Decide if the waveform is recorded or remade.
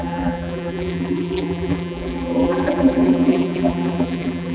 remade